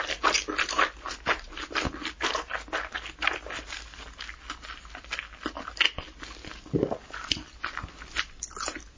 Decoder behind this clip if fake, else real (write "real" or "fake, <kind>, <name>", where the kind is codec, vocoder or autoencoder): real